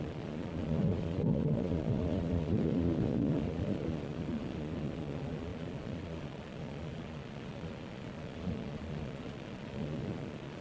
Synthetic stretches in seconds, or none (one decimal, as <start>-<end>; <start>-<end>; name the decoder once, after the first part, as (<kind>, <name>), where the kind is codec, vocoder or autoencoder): 0.0-10.6 (vocoder, Vocos)